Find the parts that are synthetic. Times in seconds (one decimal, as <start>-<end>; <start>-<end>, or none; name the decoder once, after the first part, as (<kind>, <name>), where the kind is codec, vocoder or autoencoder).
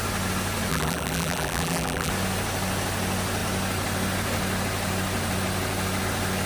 0.7-2.1 (vocoder, BigVGAN v2)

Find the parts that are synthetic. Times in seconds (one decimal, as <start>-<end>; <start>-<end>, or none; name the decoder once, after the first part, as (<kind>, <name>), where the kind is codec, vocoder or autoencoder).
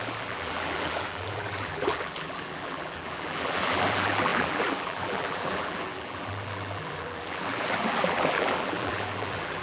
0.0-9.6 (vocoder, BigVGAN v2)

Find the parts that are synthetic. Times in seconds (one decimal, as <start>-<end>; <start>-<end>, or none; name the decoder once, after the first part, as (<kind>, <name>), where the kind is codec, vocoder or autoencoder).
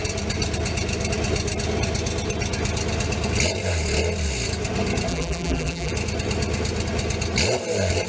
5.1-5.9 (vocoder, BigVGAN v2)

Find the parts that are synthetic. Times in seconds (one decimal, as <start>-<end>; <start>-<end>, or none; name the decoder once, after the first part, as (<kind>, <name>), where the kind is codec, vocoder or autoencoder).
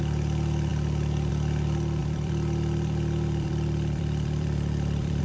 2.0-5.2 (vocoder, BigVGAN v2)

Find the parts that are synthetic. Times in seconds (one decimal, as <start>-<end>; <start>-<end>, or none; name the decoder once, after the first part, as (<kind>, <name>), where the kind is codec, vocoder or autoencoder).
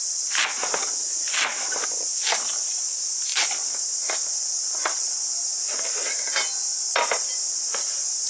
3.3-3.8 (vocoder, BigVGAN v2)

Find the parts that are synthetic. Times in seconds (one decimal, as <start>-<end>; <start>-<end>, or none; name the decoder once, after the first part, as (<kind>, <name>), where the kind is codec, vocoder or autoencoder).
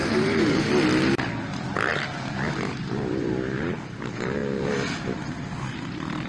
0.0-0.7 (vocoder, BigVGAN v2); 1.9-3.3